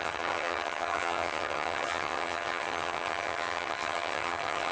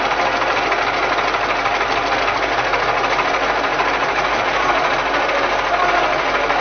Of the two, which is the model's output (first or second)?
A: first